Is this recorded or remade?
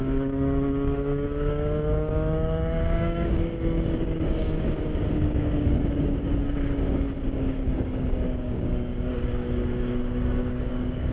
remade